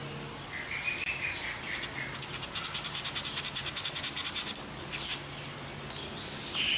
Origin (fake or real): real